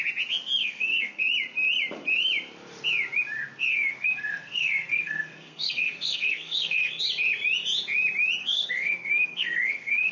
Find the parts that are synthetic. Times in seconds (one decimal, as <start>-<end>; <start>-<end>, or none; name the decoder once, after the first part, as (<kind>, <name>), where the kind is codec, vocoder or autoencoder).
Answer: 0.6-1.2 (codec, SNAC); 3.7-7.0; 8.4-10.1